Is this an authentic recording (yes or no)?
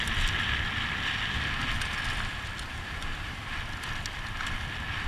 yes